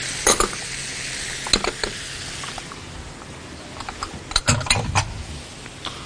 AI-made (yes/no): no